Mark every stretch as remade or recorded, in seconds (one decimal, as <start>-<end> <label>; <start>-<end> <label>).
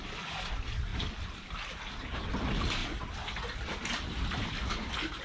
0.0-5.2 recorded